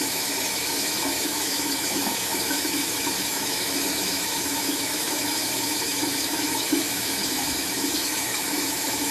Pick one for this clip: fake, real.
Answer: fake